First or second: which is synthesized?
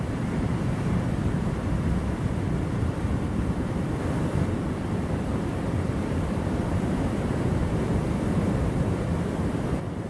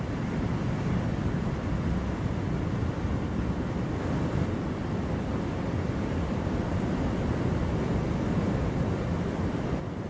first